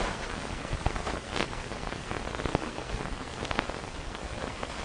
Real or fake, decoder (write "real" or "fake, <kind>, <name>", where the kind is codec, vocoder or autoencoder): fake, codec, SNAC